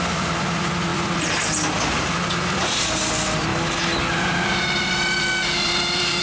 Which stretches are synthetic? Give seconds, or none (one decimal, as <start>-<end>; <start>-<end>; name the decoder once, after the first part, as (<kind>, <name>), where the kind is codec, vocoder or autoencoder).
0.0-3.5 (vocoder, BigVGAN v2); 4.1-6.2